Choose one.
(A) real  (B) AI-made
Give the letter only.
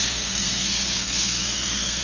B